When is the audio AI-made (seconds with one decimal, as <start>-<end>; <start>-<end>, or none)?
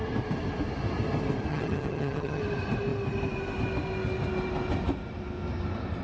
1.5-2.4